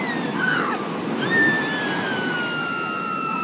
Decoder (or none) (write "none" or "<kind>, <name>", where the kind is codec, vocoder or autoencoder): none